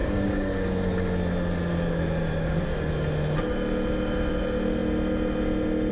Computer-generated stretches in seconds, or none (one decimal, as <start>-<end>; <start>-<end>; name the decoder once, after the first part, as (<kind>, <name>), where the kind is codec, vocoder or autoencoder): 0.0-0.9 (codec, DAC); 2.3-2.9